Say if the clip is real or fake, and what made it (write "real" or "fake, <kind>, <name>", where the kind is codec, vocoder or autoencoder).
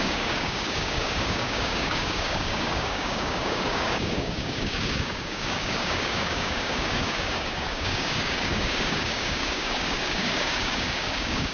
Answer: fake, codec, DAC